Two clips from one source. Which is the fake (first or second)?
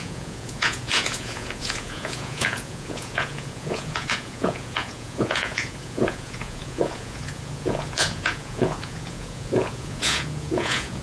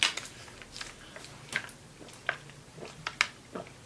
first